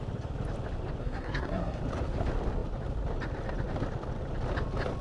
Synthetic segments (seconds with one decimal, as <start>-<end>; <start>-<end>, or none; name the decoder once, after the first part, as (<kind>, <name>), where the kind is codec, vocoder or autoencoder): 1.0-1.8 (codec, SNAC)